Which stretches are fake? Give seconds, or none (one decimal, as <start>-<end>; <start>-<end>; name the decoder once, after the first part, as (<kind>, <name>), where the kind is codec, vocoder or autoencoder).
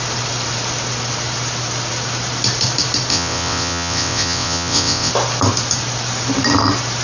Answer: 3.1-5.1 (vocoder, WaveNeXt)